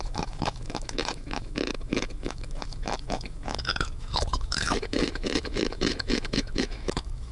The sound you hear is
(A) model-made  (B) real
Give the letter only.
A